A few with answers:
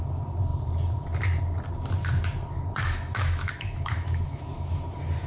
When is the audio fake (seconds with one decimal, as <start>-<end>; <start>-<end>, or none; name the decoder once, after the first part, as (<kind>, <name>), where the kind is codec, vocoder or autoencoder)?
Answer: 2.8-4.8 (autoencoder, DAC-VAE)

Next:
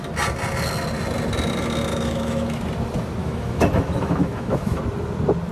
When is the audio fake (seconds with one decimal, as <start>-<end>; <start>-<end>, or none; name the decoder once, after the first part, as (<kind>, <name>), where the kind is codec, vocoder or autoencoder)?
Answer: 1.9-2.6 (autoencoder, DAC-VAE); 3.2-4.8

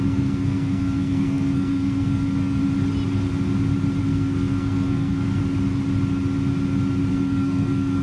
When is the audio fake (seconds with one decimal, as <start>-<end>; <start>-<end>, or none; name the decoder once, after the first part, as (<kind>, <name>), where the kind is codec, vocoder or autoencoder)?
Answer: 0.0-2.6 (codec, SNAC); 4.0-5.4; 7.1-8.0

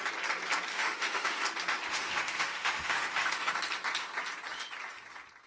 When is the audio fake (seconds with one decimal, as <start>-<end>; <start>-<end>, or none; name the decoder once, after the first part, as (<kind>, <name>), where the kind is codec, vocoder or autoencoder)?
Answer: 0.7-1.4 (autoencoder, DAC-VAE); 1.9-3.5